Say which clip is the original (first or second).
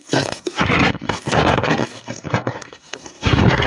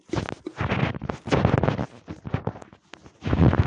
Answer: second